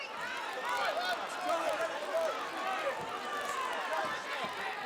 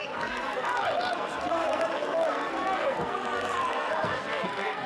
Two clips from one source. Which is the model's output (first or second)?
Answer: second